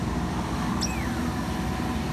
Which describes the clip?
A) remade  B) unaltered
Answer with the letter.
B